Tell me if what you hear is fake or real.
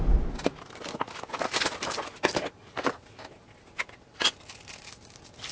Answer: real